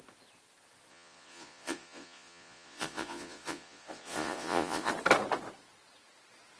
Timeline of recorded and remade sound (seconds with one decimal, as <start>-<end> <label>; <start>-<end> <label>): 0.0-0.9 recorded; 0.9-4.9 remade; 4.9-6.6 recorded